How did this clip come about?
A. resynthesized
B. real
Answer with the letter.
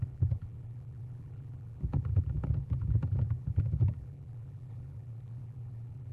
A